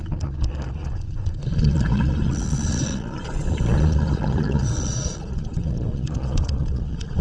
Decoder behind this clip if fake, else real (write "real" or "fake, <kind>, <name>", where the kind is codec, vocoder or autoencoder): fake, vocoder, Vocos